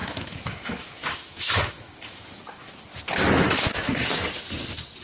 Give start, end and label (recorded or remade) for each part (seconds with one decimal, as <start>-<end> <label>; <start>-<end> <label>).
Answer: 0.0-2.8 remade; 2.8-5.0 recorded